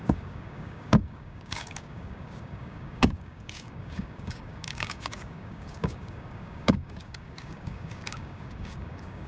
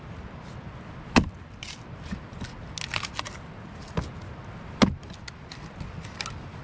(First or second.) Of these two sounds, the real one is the second